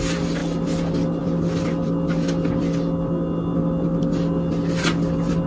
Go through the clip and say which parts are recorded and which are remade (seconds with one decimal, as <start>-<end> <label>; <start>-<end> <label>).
0.0-5.5 recorded